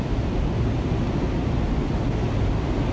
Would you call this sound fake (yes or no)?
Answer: no